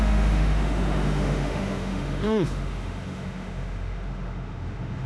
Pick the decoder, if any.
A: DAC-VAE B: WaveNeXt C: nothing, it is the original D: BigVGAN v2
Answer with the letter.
A